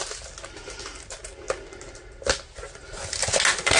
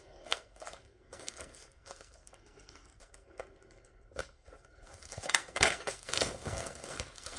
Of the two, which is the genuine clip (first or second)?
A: first